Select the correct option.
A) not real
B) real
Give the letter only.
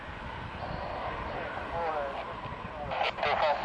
B